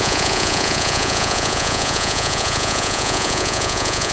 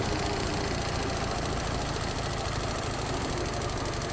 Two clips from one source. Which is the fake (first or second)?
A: first